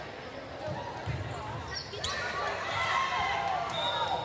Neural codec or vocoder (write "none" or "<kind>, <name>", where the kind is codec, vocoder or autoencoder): none